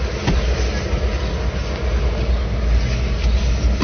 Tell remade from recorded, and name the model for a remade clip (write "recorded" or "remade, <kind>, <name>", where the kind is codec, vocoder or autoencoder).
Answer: recorded